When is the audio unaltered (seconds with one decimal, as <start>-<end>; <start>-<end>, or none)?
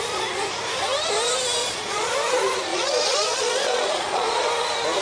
0.0-1.6; 2.1-2.7; 4.5-5.0